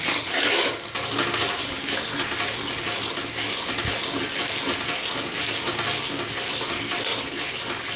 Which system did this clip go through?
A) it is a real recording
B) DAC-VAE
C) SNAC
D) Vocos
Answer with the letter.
A